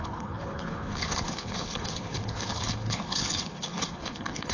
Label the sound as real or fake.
fake